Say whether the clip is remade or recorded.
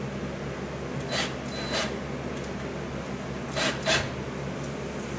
recorded